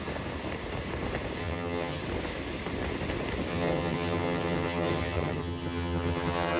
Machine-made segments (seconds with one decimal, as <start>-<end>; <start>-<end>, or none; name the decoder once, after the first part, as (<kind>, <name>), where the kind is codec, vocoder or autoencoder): 1.4-2.0 (vocoder, HiFi-GAN); 3.5-6.6